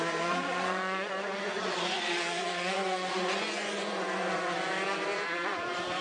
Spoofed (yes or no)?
yes